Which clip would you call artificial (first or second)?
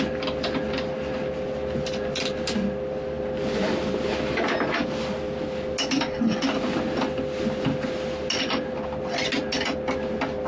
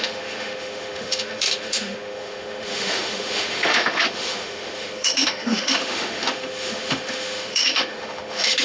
second